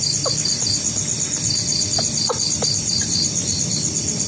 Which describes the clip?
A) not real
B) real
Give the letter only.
B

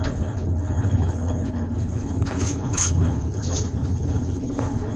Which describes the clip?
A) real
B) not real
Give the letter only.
B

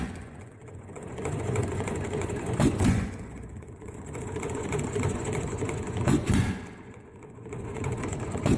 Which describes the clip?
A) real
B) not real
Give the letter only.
B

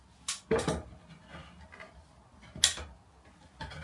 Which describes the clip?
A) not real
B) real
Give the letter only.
B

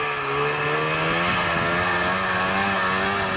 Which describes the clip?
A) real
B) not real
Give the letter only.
A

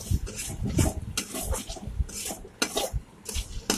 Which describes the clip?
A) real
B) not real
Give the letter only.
A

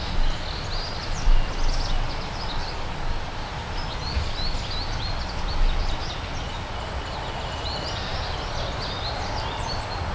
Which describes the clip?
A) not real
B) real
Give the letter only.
B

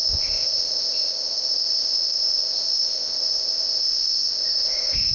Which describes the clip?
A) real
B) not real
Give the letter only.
B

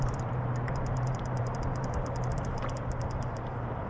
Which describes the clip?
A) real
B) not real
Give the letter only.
B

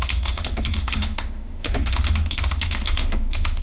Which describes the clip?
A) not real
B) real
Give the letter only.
A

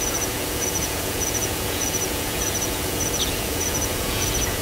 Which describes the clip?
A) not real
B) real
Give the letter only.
A